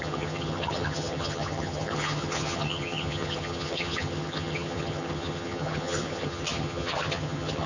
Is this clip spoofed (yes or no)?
yes